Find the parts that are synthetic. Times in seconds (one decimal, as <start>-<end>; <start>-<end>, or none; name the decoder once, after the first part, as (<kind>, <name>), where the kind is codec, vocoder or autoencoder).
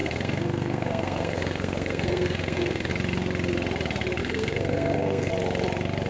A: 0.0-2.9 (codec, SNAC); 4.2-5.3